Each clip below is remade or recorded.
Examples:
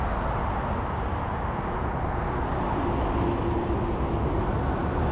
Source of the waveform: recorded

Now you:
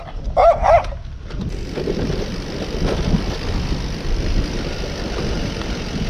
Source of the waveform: recorded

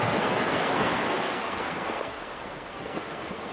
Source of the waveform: remade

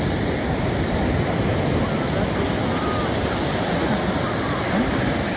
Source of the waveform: recorded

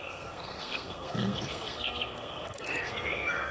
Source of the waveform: remade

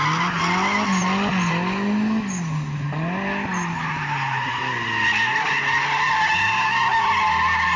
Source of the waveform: recorded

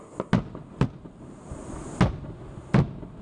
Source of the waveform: recorded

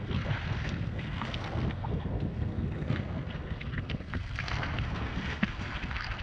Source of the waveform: remade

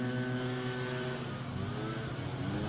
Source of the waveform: recorded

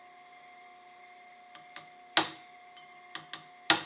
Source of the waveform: recorded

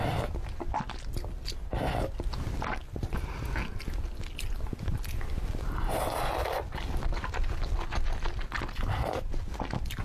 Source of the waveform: recorded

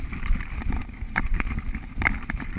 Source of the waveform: recorded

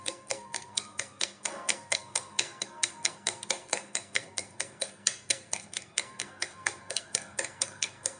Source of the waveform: remade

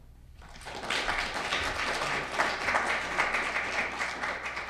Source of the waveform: recorded